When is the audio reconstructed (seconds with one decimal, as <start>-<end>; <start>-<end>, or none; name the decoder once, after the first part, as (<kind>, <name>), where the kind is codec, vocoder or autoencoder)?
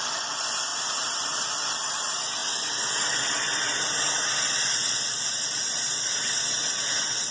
0.7-1.3 (vocoder, BigVGAN v2)